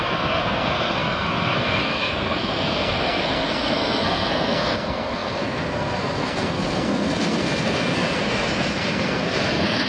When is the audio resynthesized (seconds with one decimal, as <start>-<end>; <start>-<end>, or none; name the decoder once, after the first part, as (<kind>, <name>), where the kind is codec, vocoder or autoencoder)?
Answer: 0.0-9.9 (codec, SNAC)